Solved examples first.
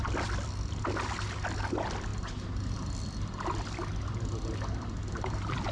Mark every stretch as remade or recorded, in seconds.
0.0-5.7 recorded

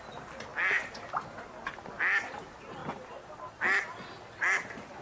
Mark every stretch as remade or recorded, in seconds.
0.0-5.0 recorded

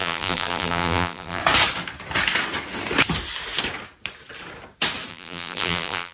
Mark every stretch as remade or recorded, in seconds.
0.0-1.4 remade; 1.4-5.1 recorded; 5.1-6.1 remade

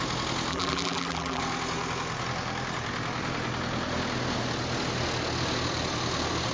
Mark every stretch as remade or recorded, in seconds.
0.0-0.5 recorded; 0.5-1.4 remade; 1.4-6.5 recorded

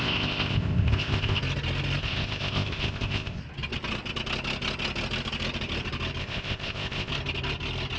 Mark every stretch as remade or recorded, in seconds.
0.0-1.4 remade; 1.4-2.0 recorded; 2.0-3.4 remade; 3.4-6.2 recorded; 6.2-7.1 remade; 7.1-8.0 recorded